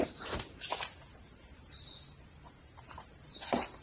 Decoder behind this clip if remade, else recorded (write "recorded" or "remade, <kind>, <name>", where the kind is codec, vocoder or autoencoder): remade, vocoder, BigVGAN v2